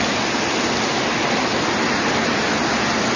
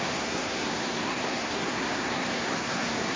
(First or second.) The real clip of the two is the first